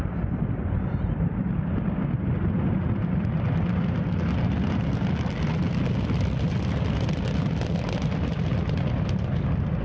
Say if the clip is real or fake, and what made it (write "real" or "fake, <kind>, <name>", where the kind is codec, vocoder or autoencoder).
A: real